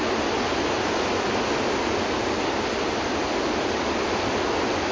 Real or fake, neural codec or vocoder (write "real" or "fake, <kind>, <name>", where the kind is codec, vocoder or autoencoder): real